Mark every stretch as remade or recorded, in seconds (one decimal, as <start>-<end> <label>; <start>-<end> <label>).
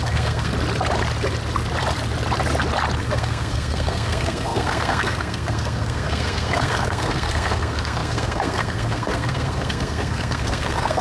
0.0-0.5 remade; 0.5-3.0 recorded; 3.0-11.0 remade